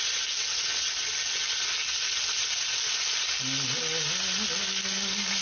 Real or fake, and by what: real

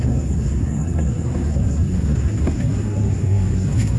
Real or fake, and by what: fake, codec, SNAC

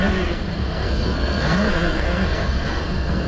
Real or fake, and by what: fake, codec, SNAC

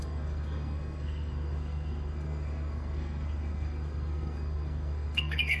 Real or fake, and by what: fake, codec, SNAC